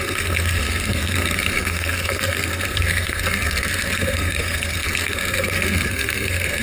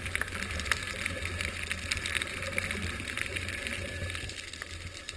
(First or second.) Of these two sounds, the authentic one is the second